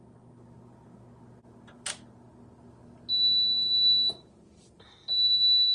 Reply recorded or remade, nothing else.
recorded